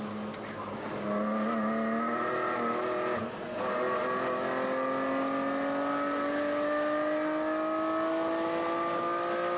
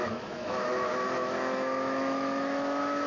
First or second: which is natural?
first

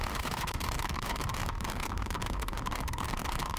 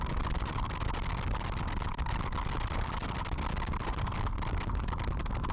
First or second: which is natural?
second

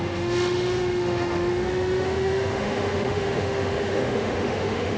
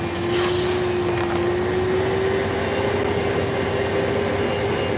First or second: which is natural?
second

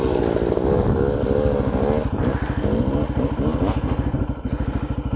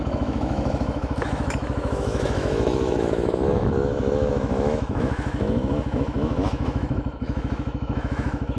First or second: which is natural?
first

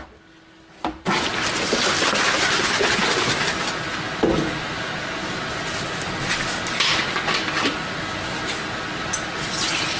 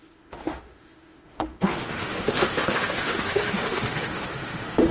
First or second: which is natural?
first